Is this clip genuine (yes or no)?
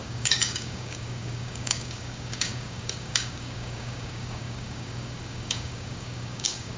no